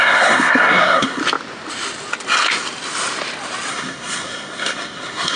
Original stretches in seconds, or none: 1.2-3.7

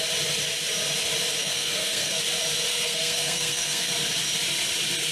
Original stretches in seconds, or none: 0.0-1.4; 2.2-2.7; 3.9-5.1

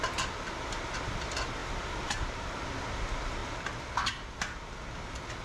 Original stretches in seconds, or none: 0.0-1.6; 2.5-5.4

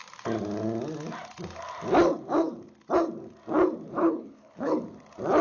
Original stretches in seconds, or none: 0.0-3.9; 4.7-5.4

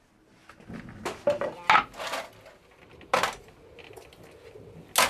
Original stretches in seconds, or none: 0.0-5.1

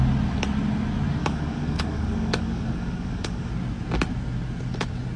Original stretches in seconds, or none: 0.0-1.2; 3.5-5.2